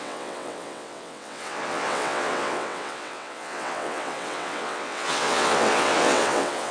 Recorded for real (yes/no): no